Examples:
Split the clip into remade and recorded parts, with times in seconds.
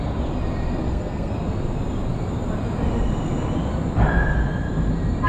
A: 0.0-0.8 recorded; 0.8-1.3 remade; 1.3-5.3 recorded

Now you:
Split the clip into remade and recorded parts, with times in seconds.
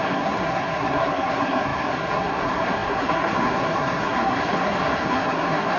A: 0.0-5.8 remade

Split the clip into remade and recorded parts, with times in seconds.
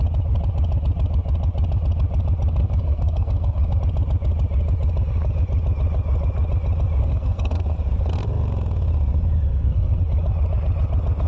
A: 0.0-2.6 recorded; 2.6-3.8 remade; 3.8-7.0 recorded; 7.0-7.6 remade; 7.6-9.5 recorded; 9.5-10.0 remade; 10.0-11.3 recorded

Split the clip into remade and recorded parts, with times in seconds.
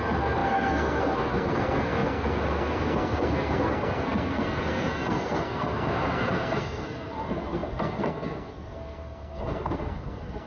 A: 0.0-10.5 remade